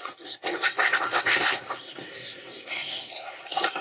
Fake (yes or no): yes